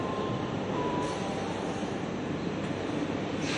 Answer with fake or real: fake